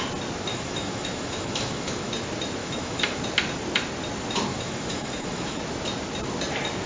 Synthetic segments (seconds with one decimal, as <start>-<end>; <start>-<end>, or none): 0.5-2.1; 2.6-3.2; 4.5-5.6